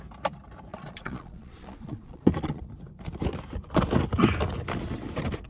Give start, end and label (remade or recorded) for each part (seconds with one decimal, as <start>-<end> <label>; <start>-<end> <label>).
0.0-0.7 recorded; 0.7-2.7 remade; 2.7-5.5 recorded